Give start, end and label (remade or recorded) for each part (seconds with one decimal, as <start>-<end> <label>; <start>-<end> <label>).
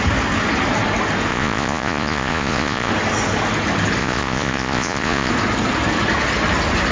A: 0.0-1.3 recorded; 1.3-2.9 remade; 2.9-4.0 recorded; 4.0-5.3 remade; 5.3-6.9 recorded